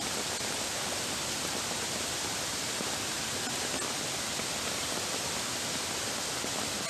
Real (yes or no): yes